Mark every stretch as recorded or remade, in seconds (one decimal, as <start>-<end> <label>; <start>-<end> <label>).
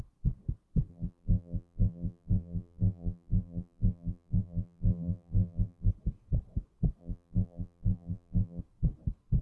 0.0-0.9 recorded; 0.9-5.9 remade; 5.9-7.0 recorded; 7.0-8.6 remade; 8.6-9.4 recorded